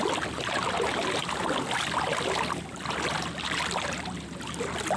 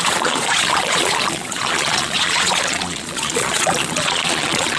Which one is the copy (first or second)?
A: second